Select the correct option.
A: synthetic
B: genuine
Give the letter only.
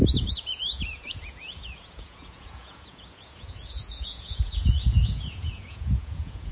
A